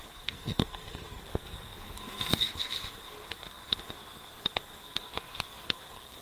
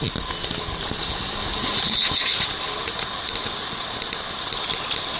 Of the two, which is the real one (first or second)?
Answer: second